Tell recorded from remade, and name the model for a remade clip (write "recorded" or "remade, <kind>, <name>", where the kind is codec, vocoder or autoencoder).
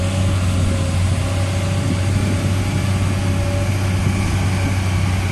recorded